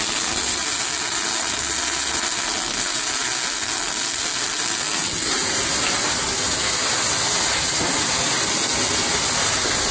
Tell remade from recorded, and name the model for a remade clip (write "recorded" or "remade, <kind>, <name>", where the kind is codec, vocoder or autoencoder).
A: recorded